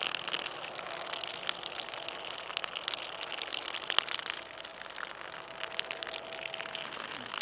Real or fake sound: real